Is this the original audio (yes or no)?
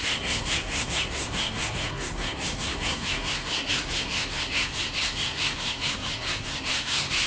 no